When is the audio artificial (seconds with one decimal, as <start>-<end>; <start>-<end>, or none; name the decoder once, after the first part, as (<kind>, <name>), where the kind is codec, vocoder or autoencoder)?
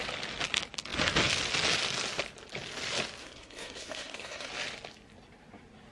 3.2-4.5 (codec, SNAC)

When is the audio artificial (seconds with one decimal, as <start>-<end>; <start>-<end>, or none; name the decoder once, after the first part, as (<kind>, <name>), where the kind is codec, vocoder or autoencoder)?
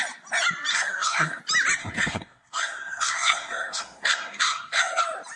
0.7-1.4 (codec, SNAC); 1.8-5.0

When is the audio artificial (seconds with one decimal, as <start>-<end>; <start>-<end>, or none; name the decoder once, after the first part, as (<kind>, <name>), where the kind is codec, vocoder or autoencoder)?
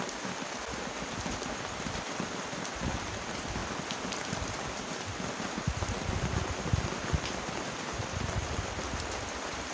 none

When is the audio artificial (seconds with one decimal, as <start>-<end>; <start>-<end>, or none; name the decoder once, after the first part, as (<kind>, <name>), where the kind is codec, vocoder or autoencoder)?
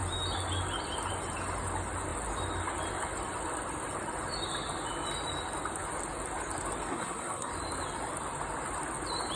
6.9-7.5 (codec, SNAC)